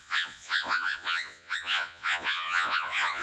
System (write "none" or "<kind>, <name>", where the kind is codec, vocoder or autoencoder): vocoder, Vocos